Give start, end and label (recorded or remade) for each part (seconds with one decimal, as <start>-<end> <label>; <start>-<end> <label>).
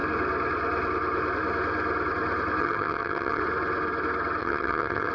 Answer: 0.0-2.6 recorded; 2.6-3.4 remade; 3.4-4.4 recorded; 4.4-5.1 remade